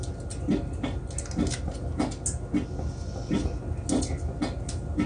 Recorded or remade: recorded